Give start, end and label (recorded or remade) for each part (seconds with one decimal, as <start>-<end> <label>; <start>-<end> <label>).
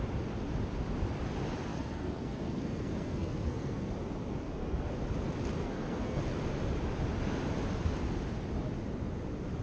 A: 0.0-1.7 recorded; 1.7-3.9 remade; 3.9-4.3 recorded; 4.3-4.9 remade; 4.9-5.6 recorded; 5.6-6.2 remade; 6.2-9.6 recorded